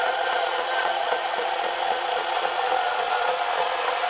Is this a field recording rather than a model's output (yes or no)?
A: no